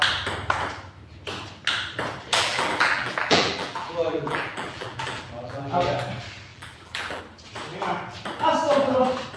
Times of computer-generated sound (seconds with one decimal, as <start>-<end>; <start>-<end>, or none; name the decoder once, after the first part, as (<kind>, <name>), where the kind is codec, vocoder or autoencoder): 2.3-5.7 (vocoder, BigVGAN v2); 6.5-7.2